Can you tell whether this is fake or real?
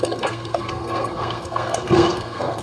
fake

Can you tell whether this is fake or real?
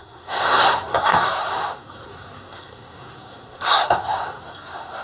fake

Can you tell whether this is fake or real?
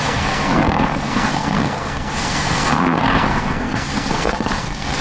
fake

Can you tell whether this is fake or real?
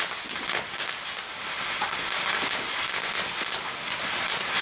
real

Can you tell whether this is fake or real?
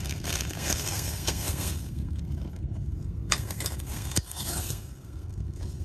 fake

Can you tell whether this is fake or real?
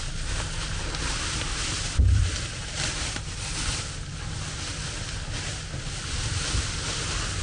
real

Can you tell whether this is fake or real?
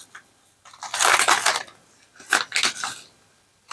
real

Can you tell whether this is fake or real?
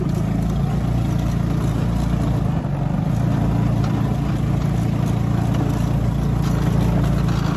real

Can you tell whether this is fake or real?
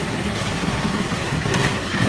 fake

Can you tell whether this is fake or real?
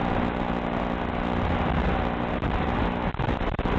real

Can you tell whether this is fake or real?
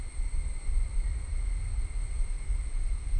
real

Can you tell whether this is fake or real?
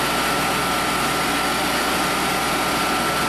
real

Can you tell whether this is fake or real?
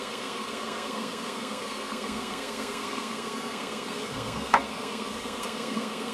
fake